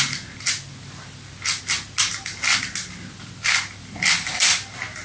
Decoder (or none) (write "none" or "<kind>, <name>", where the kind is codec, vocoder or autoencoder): none